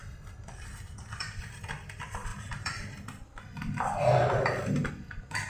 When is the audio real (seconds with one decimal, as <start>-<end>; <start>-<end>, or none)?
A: 0.0-1.0